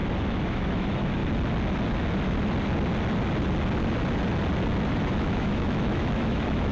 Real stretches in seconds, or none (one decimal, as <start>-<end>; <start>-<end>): 0.0-0.5; 1.2-5.2